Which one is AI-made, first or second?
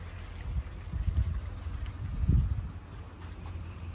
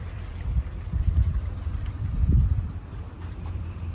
second